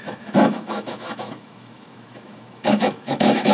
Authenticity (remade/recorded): remade